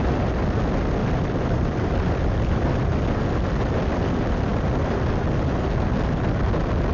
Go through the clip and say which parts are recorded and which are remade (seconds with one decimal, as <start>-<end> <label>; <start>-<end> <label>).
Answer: 0.0-1.0 recorded; 1.0-3.2 remade; 3.2-6.9 recorded